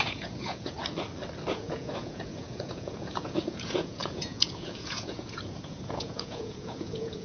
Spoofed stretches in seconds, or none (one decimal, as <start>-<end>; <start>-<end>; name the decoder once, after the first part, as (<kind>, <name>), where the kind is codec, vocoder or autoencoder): 0.0-0.8 (vocoder, Vocos); 1.5-7.2